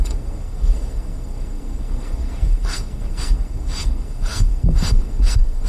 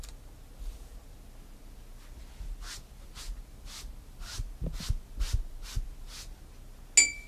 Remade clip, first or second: first